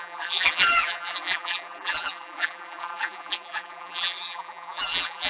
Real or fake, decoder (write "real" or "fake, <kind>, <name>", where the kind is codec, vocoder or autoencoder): fake, vocoder, BigVGAN v2